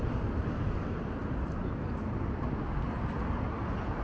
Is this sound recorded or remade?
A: recorded